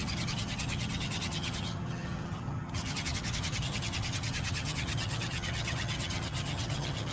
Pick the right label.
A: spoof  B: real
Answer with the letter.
A